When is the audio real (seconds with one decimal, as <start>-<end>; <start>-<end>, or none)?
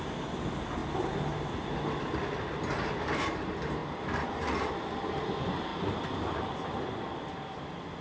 0.0-8.0